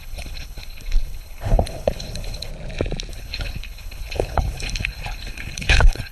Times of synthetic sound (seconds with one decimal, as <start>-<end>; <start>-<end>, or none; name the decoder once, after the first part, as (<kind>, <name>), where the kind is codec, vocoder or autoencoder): 0.0-2.5 (codec, HILCodec); 3.1-6.1